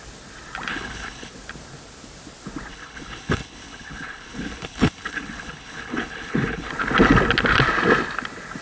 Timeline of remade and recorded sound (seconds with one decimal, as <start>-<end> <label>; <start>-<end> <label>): 0.0-0.7 recorded; 0.7-1.3 remade; 1.3-2.7 recorded; 2.7-6.7 remade; 6.7-8.6 recorded